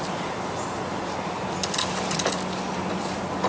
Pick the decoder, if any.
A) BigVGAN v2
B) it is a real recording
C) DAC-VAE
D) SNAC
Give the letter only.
B